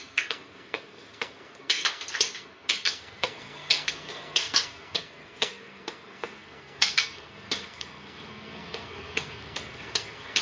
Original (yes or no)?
no